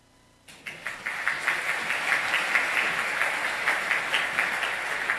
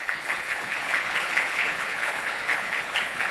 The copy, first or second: second